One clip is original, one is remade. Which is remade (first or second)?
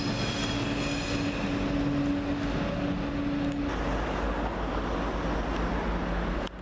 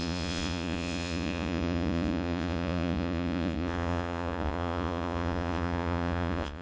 second